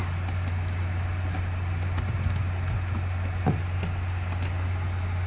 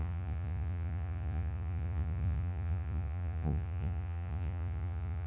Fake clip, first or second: second